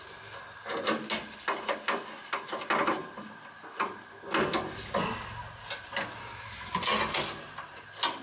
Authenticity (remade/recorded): recorded